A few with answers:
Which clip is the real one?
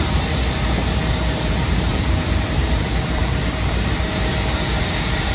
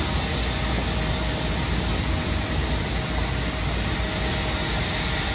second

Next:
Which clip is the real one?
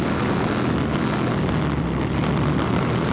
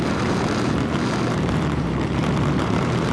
first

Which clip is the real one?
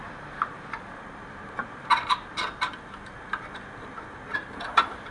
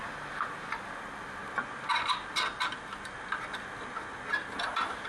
second